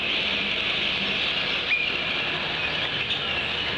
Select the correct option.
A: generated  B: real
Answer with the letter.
B